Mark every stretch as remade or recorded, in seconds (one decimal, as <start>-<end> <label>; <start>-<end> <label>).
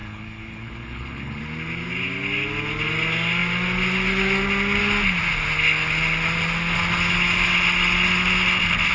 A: 0.0-1.4 remade; 1.4-8.9 recorded